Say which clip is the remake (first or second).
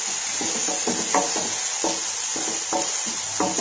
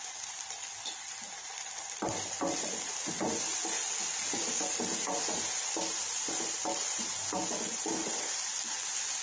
second